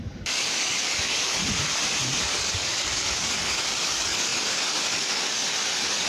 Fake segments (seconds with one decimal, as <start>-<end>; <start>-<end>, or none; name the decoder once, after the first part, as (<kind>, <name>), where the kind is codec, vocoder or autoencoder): 0.0-1.4 (codec, DAC); 2.2-6.1